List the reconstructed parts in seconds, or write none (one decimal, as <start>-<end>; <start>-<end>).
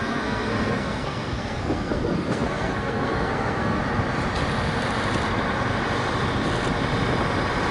0.0-3.8